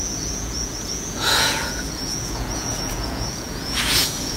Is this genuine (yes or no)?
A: no